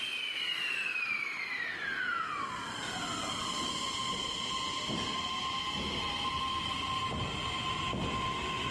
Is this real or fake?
real